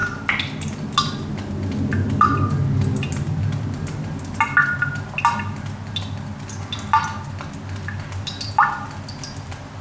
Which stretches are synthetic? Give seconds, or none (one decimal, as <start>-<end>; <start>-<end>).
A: none